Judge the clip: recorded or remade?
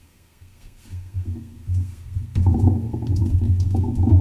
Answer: remade